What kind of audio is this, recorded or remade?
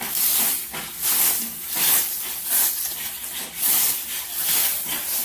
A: recorded